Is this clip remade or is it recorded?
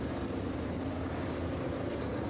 recorded